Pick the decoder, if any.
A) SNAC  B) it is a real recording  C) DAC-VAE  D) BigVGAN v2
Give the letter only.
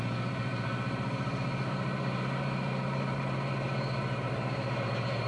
D